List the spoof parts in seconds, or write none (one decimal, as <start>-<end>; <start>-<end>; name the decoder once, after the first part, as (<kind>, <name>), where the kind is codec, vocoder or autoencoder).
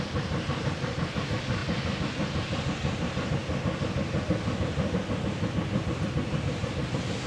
none